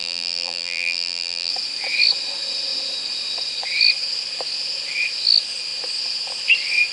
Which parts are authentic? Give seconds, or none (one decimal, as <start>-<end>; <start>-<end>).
1.5-6.9

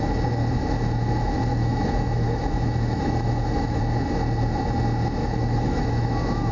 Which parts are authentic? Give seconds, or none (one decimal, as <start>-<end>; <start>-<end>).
0.0-1.5; 3.8-5.2

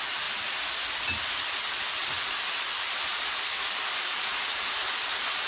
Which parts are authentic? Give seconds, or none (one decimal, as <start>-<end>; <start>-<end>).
0.0-2.0; 4.7-5.5